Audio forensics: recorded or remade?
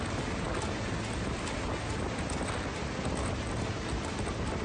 recorded